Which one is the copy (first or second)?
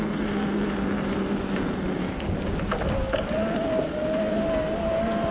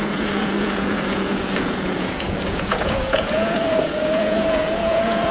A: second